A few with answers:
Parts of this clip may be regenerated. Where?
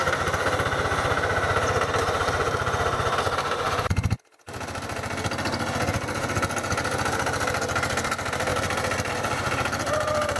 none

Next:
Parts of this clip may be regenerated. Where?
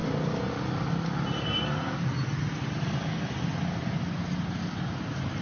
none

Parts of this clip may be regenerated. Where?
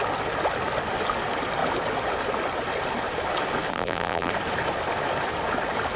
3.7-4.3 (vocoder, BigVGAN v2)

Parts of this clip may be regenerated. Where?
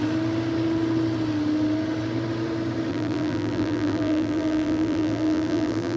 2.9-6.0 (vocoder, BigVGAN v2)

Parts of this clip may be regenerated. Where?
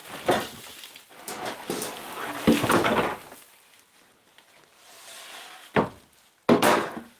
0.0-1.1 (vocoder, BigVGAN v2)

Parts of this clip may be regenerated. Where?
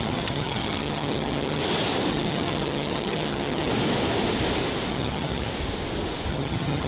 0.0-1.6 (vocoder, HiFi-GAN); 2.1-3.7; 4.9-5.5; 6.3-6.9